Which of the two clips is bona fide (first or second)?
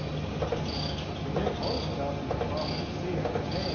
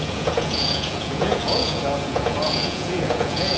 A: first